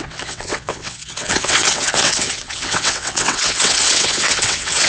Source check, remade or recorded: remade